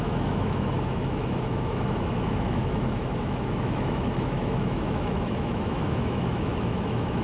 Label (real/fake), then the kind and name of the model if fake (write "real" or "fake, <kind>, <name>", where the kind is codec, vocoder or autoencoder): fake, autoencoder, DAC-VAE